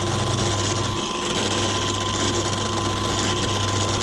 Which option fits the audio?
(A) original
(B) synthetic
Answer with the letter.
A